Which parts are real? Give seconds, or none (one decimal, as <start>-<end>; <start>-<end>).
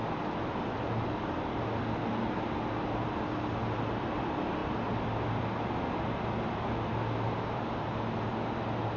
0.0-9.0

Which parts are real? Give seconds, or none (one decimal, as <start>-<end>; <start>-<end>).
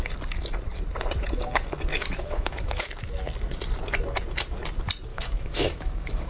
0.0-1.9; 2.9-5.1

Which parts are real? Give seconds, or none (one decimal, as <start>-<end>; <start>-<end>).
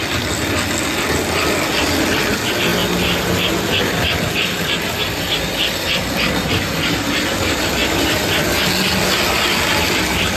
0.0-10.4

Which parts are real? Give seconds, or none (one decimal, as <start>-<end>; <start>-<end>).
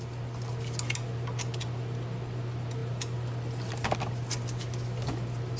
0.0-5.6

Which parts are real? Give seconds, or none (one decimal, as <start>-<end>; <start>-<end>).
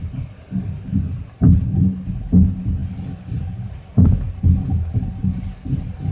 0.0-6.1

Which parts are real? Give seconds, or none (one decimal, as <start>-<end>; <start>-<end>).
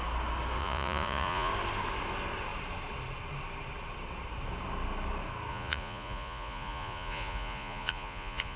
0.0-0.6; 1.5-5.5